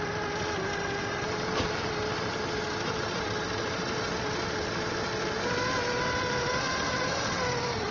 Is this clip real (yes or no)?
yes